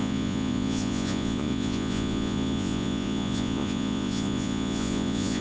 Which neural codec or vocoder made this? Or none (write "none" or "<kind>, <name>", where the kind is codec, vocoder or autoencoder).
vocoder, Vocos